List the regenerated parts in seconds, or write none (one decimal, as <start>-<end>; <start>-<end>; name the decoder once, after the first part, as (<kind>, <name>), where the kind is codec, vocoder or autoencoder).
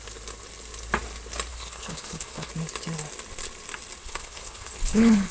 1.5-2.5 (codec, HILCodec); 4.0-5.3